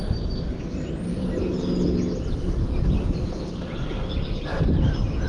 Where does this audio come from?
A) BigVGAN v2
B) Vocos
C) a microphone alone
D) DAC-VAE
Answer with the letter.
C